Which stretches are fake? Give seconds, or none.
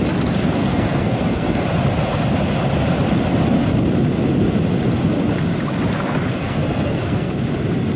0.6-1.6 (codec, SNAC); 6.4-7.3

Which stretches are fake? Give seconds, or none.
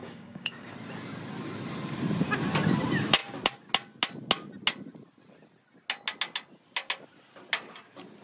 0.0-0.7 (codec, DAC)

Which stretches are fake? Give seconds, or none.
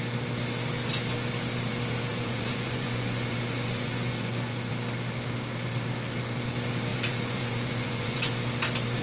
2.1-4.7 (vocoder, Vocos); 6.9-8.3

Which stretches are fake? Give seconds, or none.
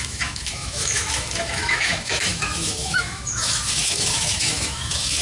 0.0-5.2 (autoencoder, DAC-VAE)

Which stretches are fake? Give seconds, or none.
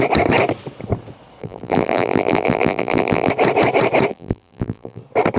1.4-3.3 (vocoder, BigVGAN v2); 4.1-5.0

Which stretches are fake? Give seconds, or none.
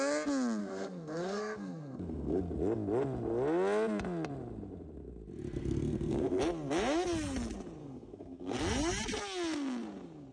0.6-2.4 (codec, SNAC); 5.6-6.4; 7.8-8.6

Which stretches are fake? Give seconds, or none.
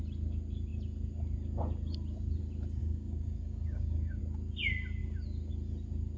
2.8-4.2 (codec, DAC)